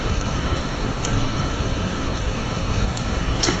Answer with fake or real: fake